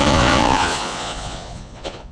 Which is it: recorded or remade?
remade